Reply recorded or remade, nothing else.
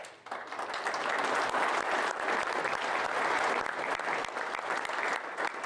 recorded